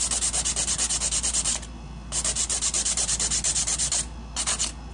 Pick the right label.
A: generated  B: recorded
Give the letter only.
B